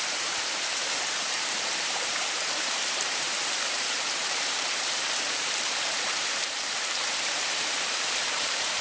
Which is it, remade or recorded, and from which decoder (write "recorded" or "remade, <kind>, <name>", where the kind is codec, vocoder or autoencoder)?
remade, vocoder, BigVGAN v2